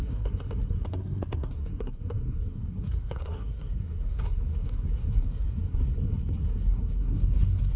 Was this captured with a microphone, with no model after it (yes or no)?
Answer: no